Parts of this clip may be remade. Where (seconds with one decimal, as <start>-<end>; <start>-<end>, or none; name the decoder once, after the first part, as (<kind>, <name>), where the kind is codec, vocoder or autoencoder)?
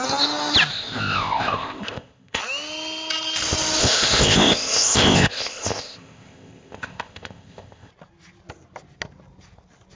0.7-2.4 (codec, ZipCodec); 3.8-7.9